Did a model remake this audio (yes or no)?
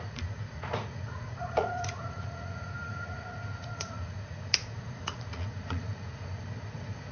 yes